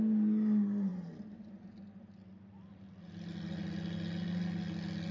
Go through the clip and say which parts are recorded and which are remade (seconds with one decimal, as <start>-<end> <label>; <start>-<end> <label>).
0.0-5.1 recorded